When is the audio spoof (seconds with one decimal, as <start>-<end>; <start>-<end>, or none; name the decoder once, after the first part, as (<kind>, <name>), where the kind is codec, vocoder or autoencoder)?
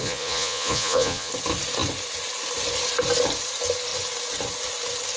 0.0-1.3 (vocoder, Vocos)